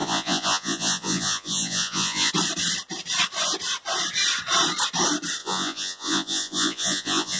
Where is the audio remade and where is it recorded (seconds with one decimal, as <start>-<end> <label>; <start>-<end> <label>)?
0.0-2.3 remade; 2.3-5.4 recorded; 5.4-7.4 remade